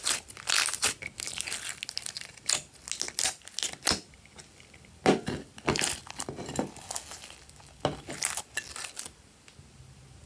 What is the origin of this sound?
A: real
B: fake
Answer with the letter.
A